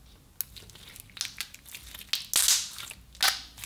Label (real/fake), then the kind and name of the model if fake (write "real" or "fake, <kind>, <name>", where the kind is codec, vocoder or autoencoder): real